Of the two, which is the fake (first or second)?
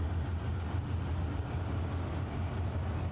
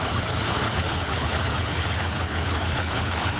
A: second